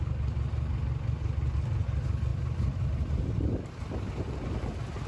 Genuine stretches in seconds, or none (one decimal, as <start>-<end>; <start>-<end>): 0.0-2.3; 4.1-5.1